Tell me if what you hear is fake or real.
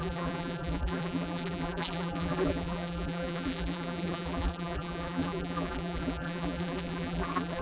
fake